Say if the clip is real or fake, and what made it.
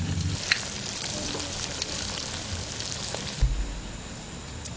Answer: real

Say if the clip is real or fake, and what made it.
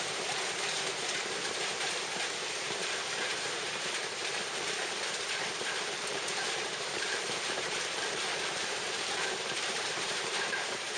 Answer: fake, vocoder, BigVGAN v2